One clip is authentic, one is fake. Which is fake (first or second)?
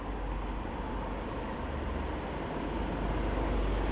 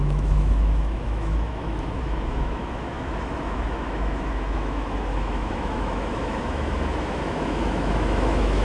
second